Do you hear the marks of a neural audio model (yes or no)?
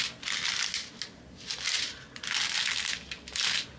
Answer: no